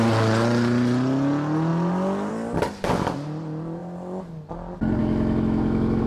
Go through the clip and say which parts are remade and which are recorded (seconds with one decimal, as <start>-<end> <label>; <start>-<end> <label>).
0.0-5.0 recorded; 5.0-6.1 remade